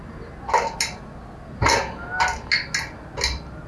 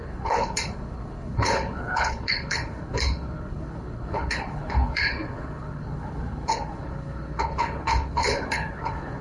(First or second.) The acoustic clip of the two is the first